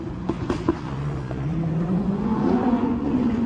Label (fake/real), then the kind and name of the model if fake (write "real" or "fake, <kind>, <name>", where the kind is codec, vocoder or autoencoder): fake, vocoder, Vocos